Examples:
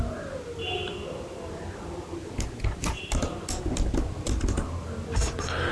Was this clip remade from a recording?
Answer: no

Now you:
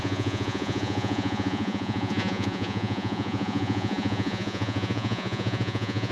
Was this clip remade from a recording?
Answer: yes